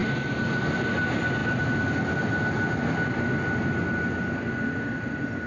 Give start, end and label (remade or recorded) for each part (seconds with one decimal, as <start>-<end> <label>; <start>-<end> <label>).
0.0-1.4 remade; 1.4-4.2 recorded; 4.2-5.5 remade